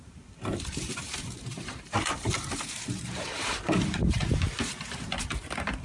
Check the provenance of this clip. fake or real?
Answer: fake